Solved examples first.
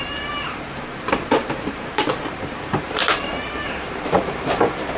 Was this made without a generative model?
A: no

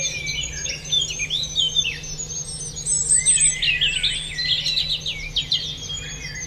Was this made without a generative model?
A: yes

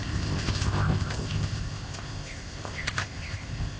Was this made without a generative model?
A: no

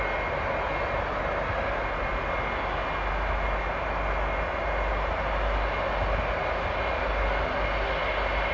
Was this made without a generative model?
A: yes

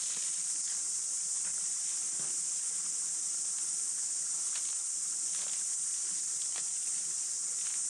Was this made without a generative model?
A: yes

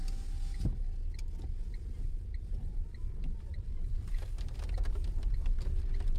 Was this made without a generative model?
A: yes